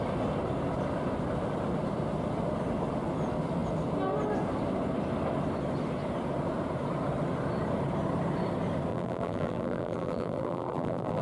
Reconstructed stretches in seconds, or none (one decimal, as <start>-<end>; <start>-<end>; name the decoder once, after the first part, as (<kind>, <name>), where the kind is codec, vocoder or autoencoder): 8.9-11.2 (vocoder, BigVGAN v2)